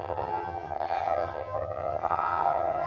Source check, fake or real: fake